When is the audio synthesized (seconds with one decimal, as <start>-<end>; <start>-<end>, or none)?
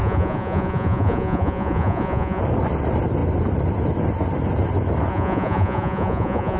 0.0-2.4; 5.1-6.6